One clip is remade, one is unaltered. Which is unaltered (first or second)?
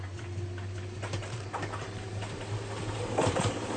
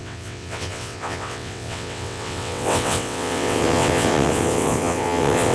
first